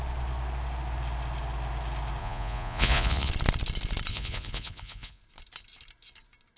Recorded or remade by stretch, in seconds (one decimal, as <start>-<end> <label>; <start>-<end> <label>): 0.0-2.2 recorded; 2.2-3.3 remade; 3.3-4.1 recorded; 4.1-5.2 remade; 5.2-6.6 recorded